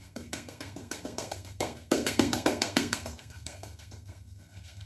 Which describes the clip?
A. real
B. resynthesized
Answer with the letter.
B